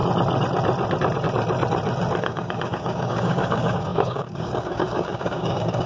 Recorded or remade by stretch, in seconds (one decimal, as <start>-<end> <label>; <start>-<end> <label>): 0.0-2.2 recorded; 2.2-5.9 remade